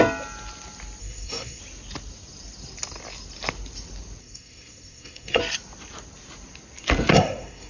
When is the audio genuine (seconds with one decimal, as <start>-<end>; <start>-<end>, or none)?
0.0-1.0; 1.6-4.2; 5.4-7.1